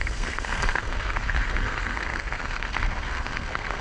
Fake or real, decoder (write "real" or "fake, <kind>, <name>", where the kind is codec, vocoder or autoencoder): fake, codec, SNAC